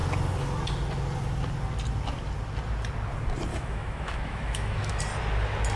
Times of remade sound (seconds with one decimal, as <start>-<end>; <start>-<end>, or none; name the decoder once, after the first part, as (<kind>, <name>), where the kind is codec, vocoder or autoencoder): 3.5-5.0 (autoencoder, DAC-VAE)